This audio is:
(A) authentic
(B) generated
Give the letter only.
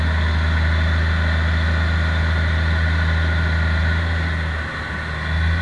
A